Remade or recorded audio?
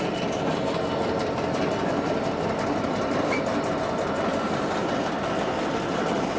recorded